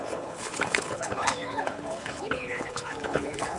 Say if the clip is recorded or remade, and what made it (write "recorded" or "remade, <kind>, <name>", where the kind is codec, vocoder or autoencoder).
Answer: remade, codec, HILCodec